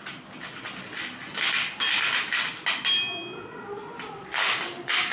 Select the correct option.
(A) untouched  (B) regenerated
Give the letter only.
A